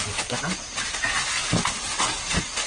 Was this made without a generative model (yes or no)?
yes